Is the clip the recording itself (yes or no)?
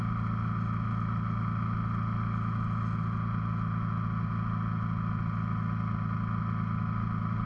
yes